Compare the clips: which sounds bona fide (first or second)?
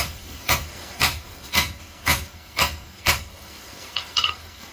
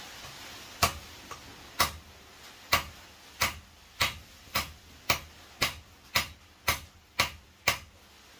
second